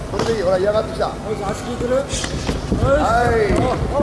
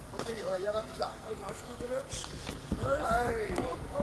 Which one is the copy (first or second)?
second